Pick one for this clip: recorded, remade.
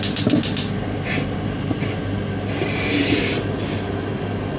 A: recorded